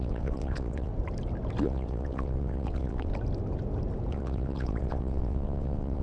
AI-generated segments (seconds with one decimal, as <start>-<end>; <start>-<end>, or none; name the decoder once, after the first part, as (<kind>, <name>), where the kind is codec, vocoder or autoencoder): 0.0-0.9 (vocoder, WaveNeXt); 1.6-3.1; 4.1-6.0